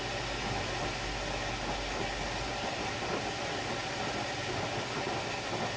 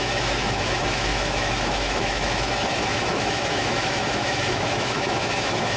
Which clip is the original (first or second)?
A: first